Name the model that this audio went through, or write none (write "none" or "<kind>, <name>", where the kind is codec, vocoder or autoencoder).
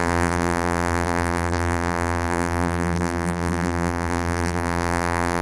vocoder, BigVGAN v2